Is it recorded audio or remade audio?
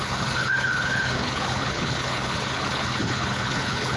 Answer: remade